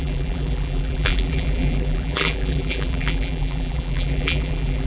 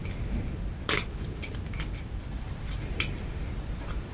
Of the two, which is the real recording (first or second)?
second